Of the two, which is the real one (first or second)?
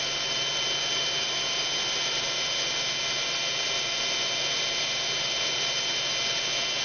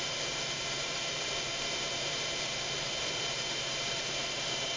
first